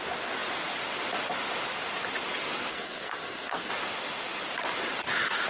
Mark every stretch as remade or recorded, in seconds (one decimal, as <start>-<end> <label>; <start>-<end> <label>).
0.0-2.7 recorded; 2.7-3.7 remade; 3.7-5.5 recorded

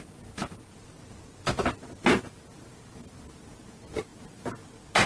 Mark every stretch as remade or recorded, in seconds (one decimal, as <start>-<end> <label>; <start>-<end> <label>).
0.0-5.1 recorded

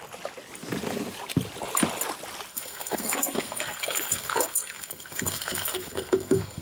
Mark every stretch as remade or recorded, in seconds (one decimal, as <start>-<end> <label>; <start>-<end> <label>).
0.0-2.5 recorded; 2.5-6.6 remade

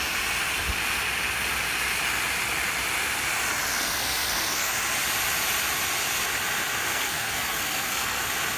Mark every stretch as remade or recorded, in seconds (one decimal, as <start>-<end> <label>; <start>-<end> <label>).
0.0-3.7 recorded; 3.7-4.7 remade; 4.7-6.9 recorded; 6.9-8.2 remade; 8.2-8.6 recorded

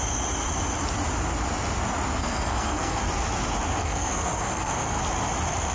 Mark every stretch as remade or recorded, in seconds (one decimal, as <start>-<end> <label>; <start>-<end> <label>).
0.0-2.2 recorded; 2.2-3.0 remade; 3.0-3.8 recorded; 3.8-5.0 remade; 5.0-5.7 recorded

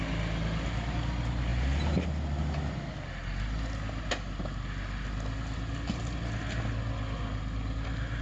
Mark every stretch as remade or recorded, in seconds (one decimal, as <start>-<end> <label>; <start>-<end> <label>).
0.0-8.2 recorded

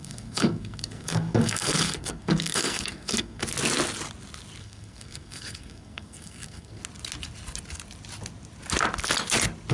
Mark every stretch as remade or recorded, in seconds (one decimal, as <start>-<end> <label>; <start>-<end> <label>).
0.0-3.4 remade; 3.4-4.6 recorded; 4.6-6.8 remade; 6.8-9.7 recorded

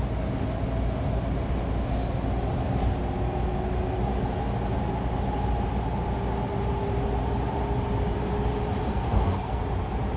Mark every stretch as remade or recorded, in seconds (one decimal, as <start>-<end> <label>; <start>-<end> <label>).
0.0-8.9 recorded; 8.9-9.6 remade; 9.6-10.2 recorded